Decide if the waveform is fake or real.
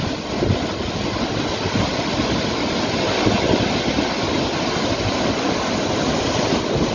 real